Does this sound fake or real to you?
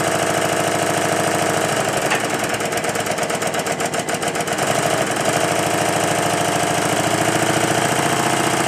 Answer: real